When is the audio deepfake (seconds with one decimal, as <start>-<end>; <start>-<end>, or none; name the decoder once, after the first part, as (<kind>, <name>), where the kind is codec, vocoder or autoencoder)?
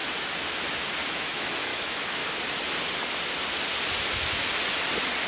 1.1-2.2 (autoencoder, DAC-VAE)